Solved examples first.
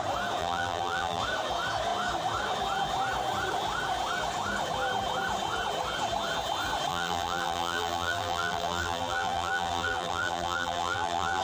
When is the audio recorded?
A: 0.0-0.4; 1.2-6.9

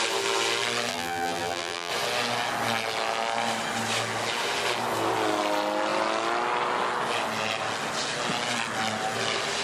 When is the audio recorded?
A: 0.0-0.9; 1.9-9.6

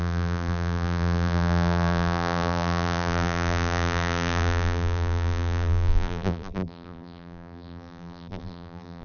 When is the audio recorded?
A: none